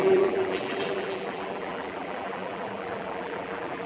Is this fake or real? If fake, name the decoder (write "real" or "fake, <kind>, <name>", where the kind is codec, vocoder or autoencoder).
fake, vocoder, BigVGAN v2